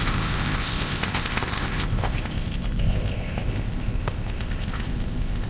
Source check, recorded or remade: remade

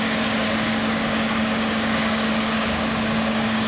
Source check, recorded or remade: remade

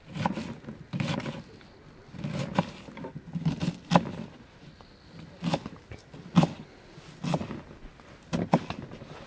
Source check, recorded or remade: recorded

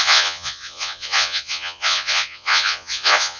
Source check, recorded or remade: remade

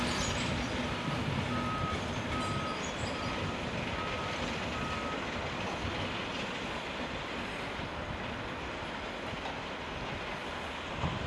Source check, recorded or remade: recorded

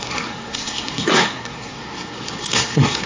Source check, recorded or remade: remade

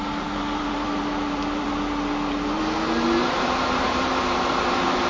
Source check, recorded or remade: remade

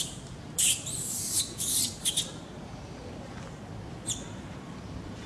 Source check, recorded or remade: remade